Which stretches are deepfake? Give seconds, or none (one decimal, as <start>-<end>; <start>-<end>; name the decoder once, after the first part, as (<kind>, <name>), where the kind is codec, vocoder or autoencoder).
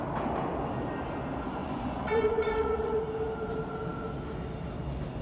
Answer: 1.6-3.0 (vocoder, Vocos)